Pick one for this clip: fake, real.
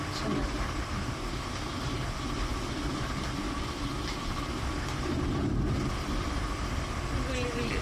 real